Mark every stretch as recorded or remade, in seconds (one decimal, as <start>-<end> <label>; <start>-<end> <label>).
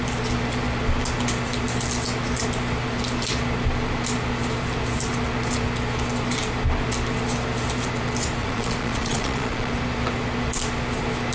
0.0-8.4 recorded; 8.4-9.7 remade; 9.7-11.3 recorded